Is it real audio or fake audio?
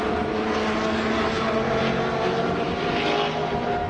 real